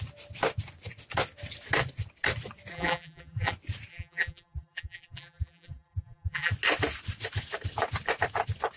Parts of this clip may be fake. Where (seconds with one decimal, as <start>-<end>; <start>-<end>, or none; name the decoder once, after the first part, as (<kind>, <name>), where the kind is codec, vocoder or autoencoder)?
2.7-3.5 (vocoder, BigVGAN v2); 3.9-6.5